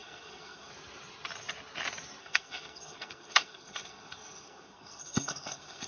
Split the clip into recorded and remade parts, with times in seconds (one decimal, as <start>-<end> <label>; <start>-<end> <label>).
0.0-0.7 remade; 0.7-2.2 recorded; 2.2-5.9 remade